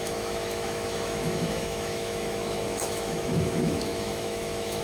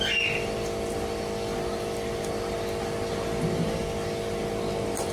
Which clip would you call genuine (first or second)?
second